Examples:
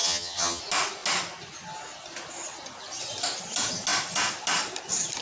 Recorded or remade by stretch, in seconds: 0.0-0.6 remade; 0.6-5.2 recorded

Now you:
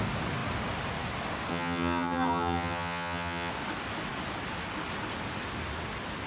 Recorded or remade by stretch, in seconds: 0.0-1.5 recorded; 1.5-3.5 remade; 3.5-6.3 recorded

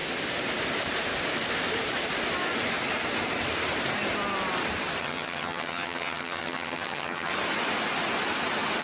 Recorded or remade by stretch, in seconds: 0.0-5.0 recorded; 5.0-7.3 remade; 7.3-8.8 recorded

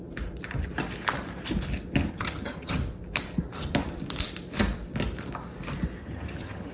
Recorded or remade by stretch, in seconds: 0.0-2.1 recorded; 2.1-2.8 remade; 2.8-6.0 recorded; 6.0-6.7 remade

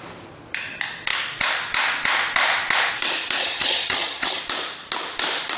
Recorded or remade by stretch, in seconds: 0.0-3.4 recorded; 3.4-4.4 remade; 4.4-5.6 recorded

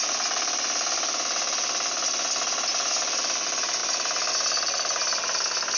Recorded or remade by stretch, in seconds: 0.0-5.8 recorded